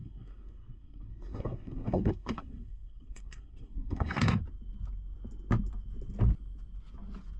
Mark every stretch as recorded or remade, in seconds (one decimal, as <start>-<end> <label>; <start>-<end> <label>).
0.0-4.4 remade; 4.4-7.4 recorded